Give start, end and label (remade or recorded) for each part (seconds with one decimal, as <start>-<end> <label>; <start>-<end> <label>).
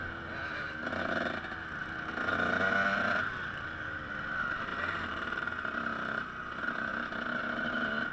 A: 0.0-8.1 recorded